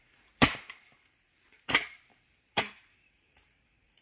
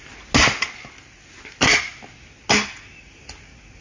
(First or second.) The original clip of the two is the second